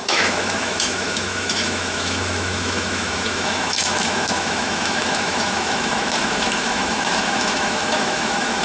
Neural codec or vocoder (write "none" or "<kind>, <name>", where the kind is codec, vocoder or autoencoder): autoencoder, DAC-VAE